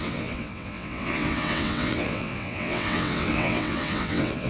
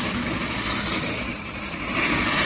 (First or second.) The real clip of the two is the second